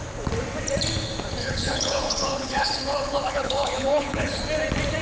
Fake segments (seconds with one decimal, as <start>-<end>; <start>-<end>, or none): 1.4-4.4